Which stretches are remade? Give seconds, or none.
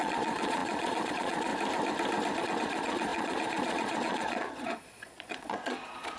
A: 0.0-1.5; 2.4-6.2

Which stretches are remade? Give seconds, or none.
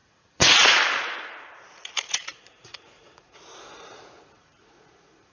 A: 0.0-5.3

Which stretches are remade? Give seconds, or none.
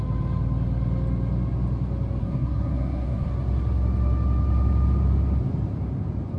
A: 2.2-3.3